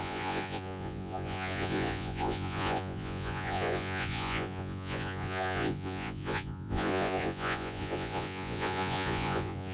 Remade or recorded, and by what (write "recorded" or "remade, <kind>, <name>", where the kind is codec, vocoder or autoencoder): remade, vocoder, Vocos